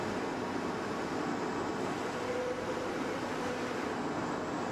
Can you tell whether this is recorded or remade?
recorded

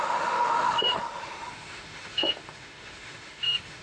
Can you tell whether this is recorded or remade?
remade